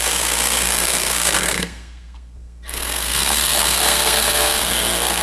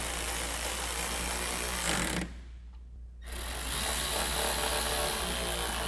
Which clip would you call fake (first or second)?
first